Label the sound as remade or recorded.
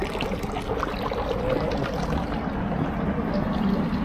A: recorded